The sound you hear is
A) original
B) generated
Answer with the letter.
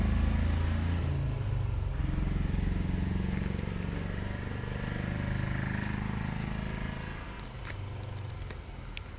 A